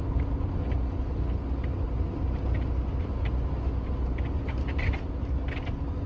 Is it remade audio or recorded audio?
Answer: recorded